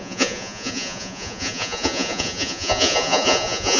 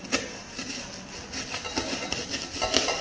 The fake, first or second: first